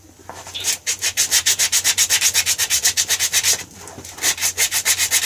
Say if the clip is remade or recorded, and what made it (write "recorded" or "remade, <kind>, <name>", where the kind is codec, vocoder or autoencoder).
recorded